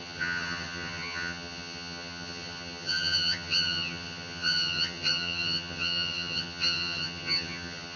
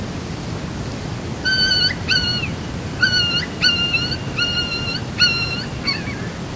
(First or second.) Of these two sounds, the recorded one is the second